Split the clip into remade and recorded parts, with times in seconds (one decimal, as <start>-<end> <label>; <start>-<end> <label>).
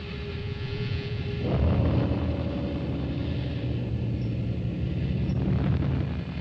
0.0-0.4 recorded; 0.4-1.2 remade; 1.2-6.4 recorded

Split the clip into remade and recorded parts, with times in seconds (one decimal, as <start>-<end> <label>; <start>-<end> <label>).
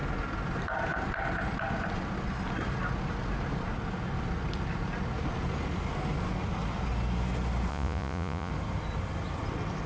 0.0-7.7 recorded; 7.7-8.5 remade; 8.5-9.9 recorded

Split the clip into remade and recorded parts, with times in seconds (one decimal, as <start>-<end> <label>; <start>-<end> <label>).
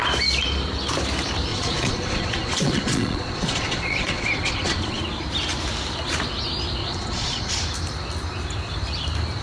0.0-1.5 recorded; 1.5-5.0 remade; 5.0-6.8 recorded; 6.8-7.5 remade; 7.5-9.4 recorded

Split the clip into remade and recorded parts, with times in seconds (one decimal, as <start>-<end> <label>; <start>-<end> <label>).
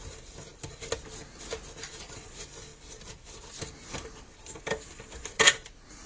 0.0-6.1 recorded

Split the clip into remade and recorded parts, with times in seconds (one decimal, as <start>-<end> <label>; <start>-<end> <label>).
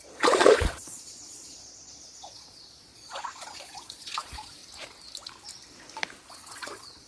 0.0-4.6 remade; 4.6-6.3 recorded; 6.3-7.1 remade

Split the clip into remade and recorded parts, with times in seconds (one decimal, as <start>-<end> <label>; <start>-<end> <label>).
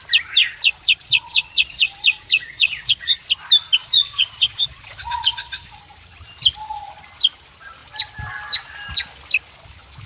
0.0-0.4 recorded; 0.4-3.3 remade; 3.3-3.8 recorded; 3.8-5.8 remade; 5.8-10.1 recorded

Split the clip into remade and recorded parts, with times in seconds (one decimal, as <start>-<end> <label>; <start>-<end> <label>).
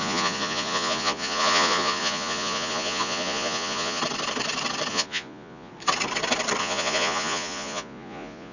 0.0-4.0 remade; 4.0-4.9 recorded; 4.9-5.7 remade; 5.7-6.6 recorded; 6.6-8.5 remade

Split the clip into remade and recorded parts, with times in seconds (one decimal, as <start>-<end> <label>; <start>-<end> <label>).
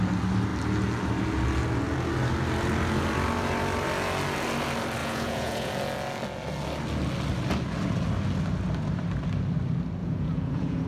0.0-5.0 recorded; 5.0-5.7 remade; 5.7-10.0 recorded; 10.0-10.9 remade